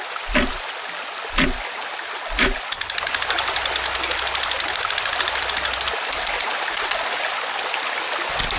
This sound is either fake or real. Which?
real